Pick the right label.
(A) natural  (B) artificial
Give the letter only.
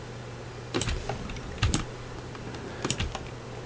A